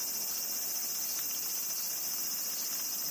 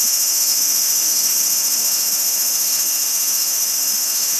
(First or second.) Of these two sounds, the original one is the first